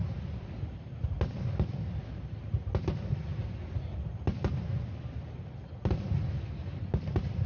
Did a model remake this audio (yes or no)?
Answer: no